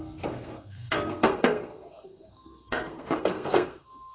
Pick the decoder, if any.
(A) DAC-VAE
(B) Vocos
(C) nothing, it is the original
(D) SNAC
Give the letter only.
D